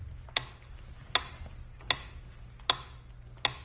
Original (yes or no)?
yes